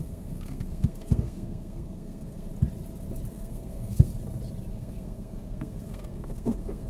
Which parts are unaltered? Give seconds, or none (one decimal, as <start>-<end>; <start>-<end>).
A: 2.5-3.3; 4.1-4.7